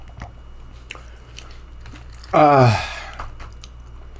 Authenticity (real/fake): real